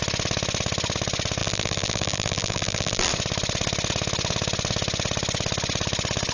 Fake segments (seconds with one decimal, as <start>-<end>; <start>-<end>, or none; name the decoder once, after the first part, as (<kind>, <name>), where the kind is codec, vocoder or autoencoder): 1.4-3.1 (vocoder, BigVGAN v2)